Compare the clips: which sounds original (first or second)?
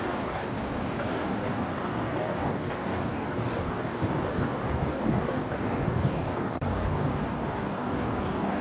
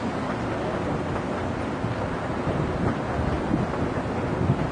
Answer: second